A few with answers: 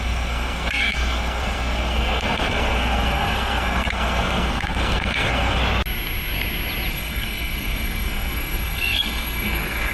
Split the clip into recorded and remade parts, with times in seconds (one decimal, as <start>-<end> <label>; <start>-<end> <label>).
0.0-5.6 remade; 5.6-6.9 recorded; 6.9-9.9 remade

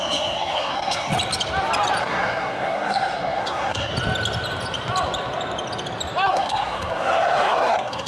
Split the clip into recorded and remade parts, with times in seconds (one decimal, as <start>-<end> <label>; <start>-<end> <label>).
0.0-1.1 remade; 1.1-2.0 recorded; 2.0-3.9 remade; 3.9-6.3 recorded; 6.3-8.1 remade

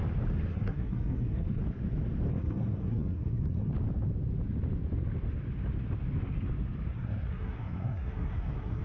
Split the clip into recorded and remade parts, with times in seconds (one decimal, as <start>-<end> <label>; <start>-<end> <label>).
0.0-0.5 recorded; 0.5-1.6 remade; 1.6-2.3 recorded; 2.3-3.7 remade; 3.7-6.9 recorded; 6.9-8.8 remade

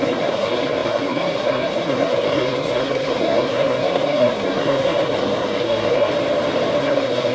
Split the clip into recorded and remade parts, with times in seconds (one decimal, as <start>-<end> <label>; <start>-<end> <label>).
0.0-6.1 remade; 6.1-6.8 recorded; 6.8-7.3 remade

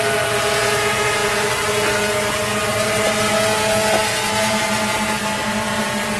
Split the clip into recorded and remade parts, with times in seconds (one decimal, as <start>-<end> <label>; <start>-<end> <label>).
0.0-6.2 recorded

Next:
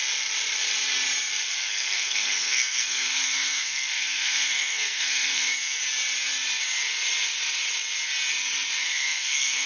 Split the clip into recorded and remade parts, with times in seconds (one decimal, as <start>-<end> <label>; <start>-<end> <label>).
0.0-1.6 recorded; 1.6-5.8 remade; 5.8-8.8 recorded; 8.8-9.7 remade

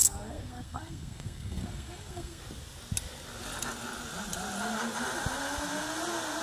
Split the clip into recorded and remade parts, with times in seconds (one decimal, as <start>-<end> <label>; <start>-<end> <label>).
0.0-2.4 remade; 2.4-6.4 recorded